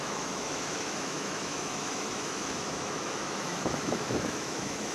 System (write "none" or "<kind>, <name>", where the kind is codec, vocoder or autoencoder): autoencoder, DAC-VAE